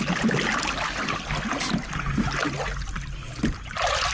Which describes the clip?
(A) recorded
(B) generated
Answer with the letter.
A